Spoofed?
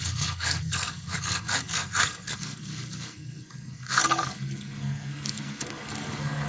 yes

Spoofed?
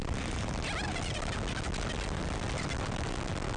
no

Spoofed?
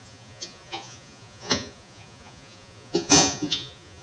yes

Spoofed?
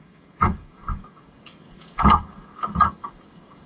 yes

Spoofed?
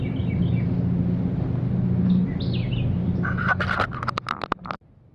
no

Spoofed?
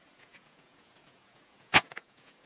yes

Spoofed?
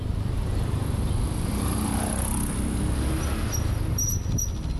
no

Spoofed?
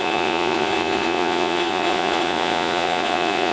yes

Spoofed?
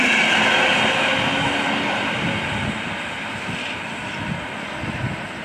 no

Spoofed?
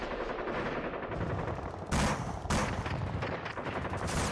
no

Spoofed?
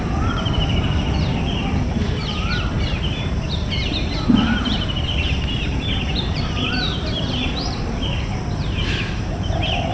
yes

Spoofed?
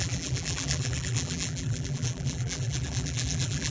yes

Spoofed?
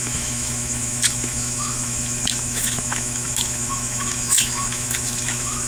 yes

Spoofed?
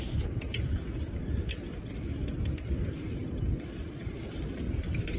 no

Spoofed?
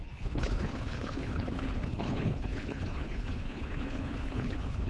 yes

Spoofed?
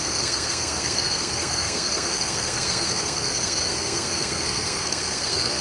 yes